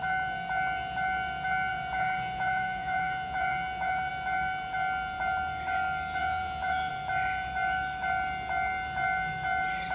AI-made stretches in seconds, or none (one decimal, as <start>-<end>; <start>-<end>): 1.7-4.1; 6.2-6.9